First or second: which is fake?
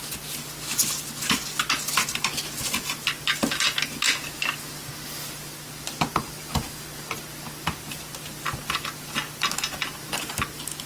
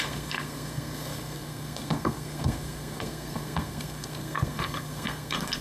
second